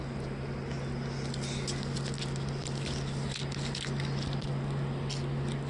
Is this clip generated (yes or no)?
no